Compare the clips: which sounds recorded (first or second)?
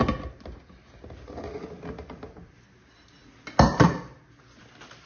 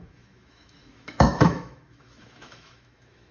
first